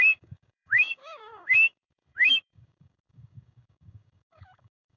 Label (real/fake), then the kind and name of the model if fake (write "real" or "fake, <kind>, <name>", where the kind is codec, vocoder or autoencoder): fake, codec, DAC